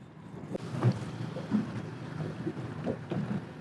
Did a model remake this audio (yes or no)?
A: no